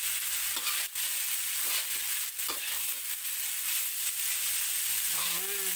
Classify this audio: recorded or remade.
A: recorded